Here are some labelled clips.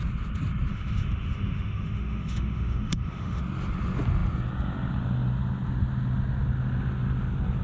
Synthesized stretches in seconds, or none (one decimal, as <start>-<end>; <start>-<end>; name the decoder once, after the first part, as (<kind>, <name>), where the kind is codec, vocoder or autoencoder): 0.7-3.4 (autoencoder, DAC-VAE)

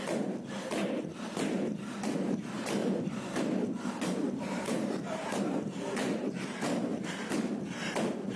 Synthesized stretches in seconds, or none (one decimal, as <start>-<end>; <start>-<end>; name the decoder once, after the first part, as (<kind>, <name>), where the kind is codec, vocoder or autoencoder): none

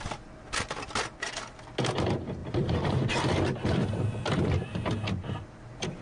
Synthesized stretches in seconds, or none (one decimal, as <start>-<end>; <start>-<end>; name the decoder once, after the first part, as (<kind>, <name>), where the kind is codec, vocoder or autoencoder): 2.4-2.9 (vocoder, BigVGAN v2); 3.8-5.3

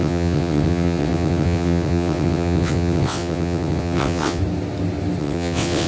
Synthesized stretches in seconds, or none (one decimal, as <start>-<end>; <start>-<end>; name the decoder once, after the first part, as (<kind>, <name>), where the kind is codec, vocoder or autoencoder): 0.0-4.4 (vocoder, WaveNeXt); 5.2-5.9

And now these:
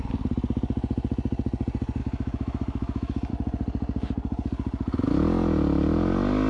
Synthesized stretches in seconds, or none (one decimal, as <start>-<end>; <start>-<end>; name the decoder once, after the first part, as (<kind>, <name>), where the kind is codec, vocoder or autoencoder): 2.0-3.3 (autoencoder, DAC-VAE)